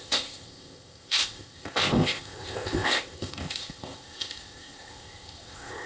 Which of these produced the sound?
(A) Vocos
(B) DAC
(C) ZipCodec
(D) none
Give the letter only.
C